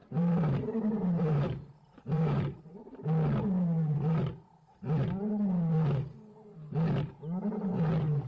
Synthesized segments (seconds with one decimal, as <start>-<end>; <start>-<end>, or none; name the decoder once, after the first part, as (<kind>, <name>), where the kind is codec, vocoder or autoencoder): 0.0-2.6 (vocoder, BigVGAN v2)